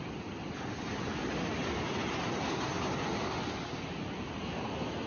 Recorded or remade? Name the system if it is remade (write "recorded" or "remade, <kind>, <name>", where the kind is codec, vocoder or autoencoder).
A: recorded